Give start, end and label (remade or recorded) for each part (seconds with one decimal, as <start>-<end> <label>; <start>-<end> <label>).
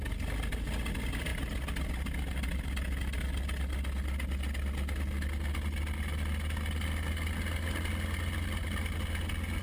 0.0-9.6 recorded